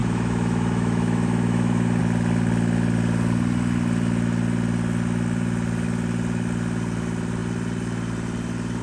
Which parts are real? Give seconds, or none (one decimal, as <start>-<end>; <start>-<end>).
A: 2.0-8.8